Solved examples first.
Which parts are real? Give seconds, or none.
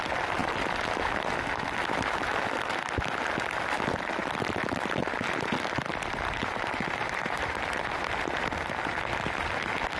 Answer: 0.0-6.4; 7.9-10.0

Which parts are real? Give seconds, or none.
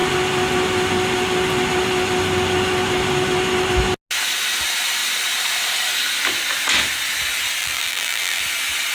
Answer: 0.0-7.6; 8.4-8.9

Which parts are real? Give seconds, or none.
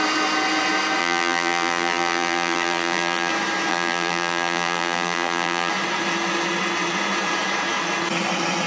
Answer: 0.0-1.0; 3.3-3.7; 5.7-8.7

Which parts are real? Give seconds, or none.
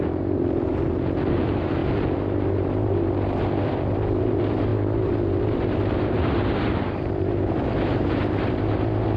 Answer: none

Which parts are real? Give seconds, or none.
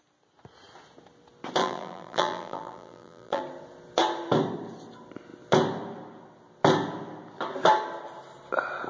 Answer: 0.0-1.6; 3.4-8.9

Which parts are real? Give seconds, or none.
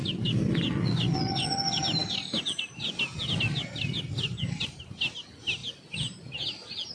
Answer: 0.0-6.9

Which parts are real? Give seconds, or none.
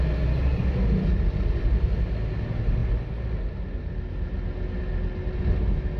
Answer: 0.0-6.0